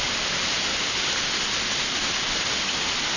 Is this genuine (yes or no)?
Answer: yes